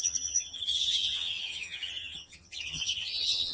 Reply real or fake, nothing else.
fake